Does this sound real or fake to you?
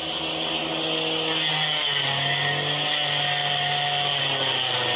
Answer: real